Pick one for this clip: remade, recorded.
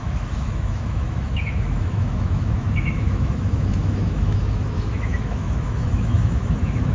remade